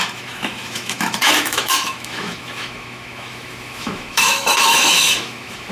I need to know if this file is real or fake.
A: fake